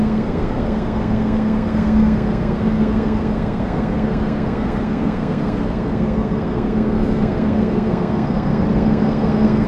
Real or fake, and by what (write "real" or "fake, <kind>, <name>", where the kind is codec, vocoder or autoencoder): fake, codec, SNAC